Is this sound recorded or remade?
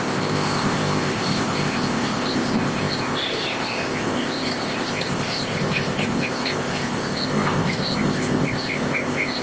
remade